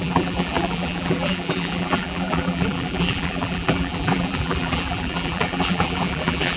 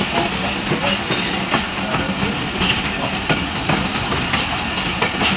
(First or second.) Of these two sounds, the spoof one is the first